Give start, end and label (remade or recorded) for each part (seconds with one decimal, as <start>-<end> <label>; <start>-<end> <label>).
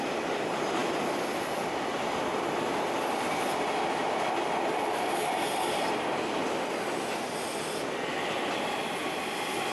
0.0-9.7 recorded